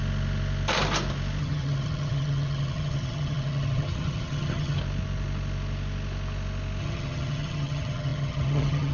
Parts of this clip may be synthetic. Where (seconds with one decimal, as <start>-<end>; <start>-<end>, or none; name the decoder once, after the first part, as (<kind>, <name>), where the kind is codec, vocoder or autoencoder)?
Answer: 1.4-4.8 (vocoder, HiFi-GAN); 6.8-8.9